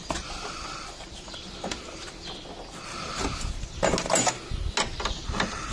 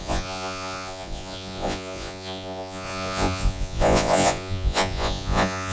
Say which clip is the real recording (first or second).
first